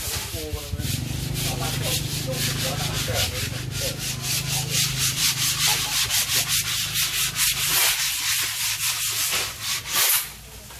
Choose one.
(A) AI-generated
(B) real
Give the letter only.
B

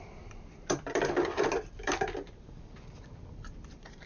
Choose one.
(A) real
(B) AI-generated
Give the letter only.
B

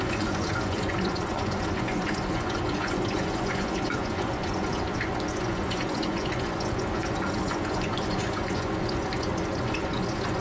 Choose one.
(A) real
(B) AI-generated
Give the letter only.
B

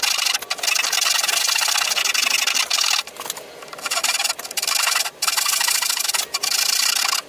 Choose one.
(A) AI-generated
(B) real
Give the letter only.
B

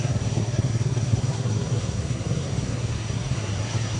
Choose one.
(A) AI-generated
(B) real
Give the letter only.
A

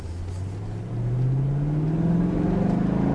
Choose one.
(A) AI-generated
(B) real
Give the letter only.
B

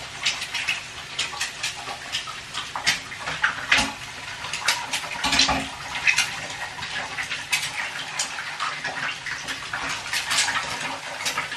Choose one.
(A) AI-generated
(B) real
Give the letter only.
B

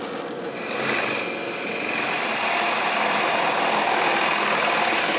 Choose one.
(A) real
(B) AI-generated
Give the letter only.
A